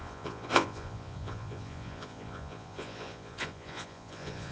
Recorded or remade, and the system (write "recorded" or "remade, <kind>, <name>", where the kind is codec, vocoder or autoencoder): remade, vocoder, Vocos